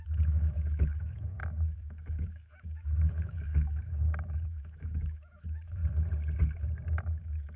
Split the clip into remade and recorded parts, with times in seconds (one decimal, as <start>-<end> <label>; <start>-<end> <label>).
0.0-5.8 remade; 5.8-7.0 recorded; 7.0-7.6 remade